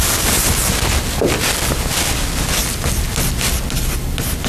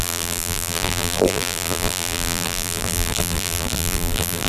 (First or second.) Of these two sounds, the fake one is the second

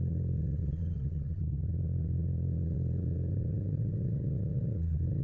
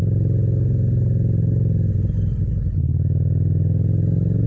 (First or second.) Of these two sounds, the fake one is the first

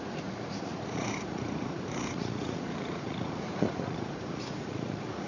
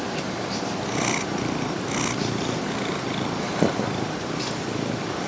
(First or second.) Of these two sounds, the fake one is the first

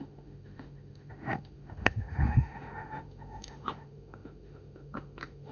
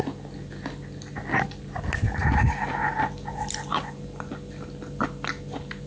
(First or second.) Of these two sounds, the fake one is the first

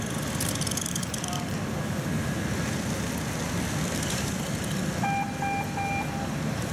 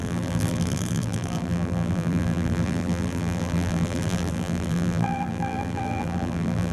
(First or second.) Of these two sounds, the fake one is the second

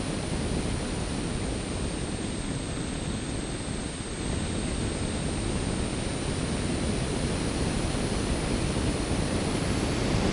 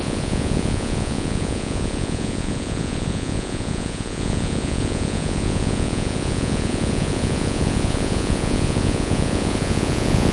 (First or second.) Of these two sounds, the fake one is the second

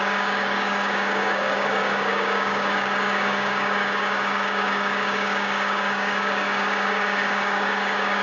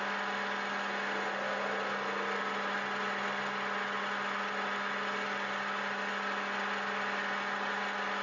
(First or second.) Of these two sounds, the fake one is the first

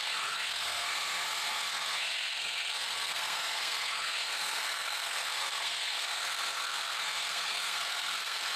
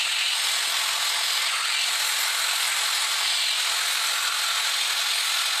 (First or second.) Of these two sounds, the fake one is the first